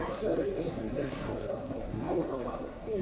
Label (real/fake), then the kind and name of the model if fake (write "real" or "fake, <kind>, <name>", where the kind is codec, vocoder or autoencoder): fake, codec, SNAC